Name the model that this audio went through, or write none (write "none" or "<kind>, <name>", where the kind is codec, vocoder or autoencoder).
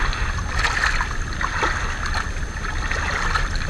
none